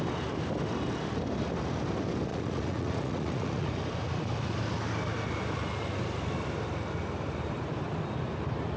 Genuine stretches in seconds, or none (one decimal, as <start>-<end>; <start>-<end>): 0.0-2.3; 3.7-8.8